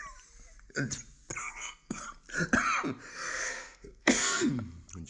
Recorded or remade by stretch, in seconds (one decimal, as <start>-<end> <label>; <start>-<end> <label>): 0.0-1.4 recorded; 1.4-2.0 remade; 2.0-3.1 recorded; 3.1-4.5 remade; 4.5-5.1 recorded